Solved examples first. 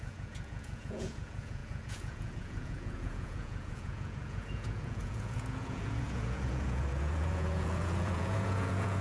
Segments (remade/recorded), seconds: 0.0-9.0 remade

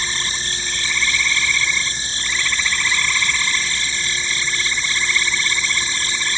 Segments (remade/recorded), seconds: 0.0-6.4 recorded

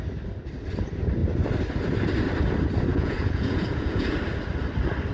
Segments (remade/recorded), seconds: 0.0-2.9 recorded; 2.9-4.1 remade; 4.1-5.1 recorded

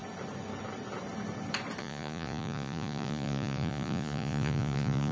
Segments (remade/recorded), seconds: 0.0-1.8 recorded; 1.8-5.1 remade

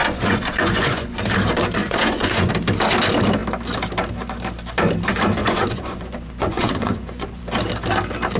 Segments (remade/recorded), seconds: 0.0-1.2 remade; 1.2-1.8 recorded; 1.8-2.5 remade; 2.5-5.4 recorded; 5.4-7.4 remade; 7.4-8.4 recorded

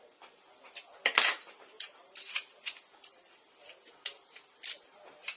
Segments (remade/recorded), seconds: 0.0-5.4 recorded

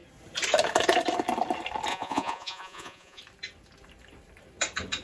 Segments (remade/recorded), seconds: 0.0-1.9 recorded; 1.9-3.2 remade; 3.2-5.0 recorded

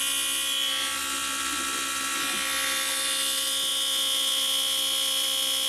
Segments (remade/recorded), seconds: 0.0-5.7 recorded